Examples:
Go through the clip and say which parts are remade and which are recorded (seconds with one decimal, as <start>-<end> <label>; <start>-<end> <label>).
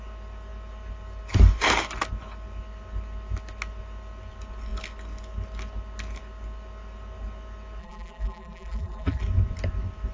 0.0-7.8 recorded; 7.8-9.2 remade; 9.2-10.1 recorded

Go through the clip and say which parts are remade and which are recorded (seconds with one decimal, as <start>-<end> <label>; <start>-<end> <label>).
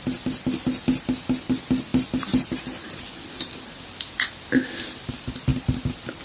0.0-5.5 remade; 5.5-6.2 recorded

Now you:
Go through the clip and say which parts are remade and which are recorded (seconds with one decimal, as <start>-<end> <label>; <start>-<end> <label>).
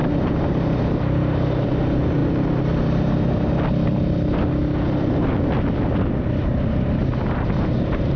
0.0-1.8 remade; 1.8-7.0 recorded; 7.0-8.2 remade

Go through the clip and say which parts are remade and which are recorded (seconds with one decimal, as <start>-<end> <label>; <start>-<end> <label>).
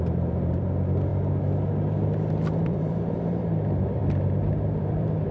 0.0-1.1 remade; 1.1-2.6 recorded; 2.6-4.0 remade; 4.0-4.8 recorded; 4.8-5.3 remade